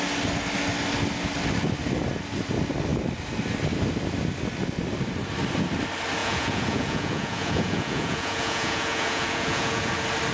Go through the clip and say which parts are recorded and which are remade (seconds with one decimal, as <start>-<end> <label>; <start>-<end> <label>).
0.0-6.2 recorded; 6.2-9.9 remade; 9.9-10.3 recorded